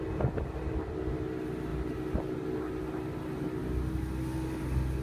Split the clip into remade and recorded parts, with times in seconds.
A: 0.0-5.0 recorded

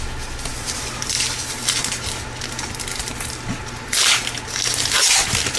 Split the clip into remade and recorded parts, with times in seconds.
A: 0.0-5.6 recorded